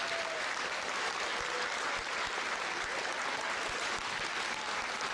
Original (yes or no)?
yes